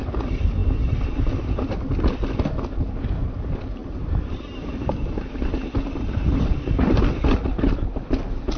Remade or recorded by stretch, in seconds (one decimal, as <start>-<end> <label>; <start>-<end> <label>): 0.0-3.8 recorded; 3.8-7.1 remade; 7.1-8.6 recorded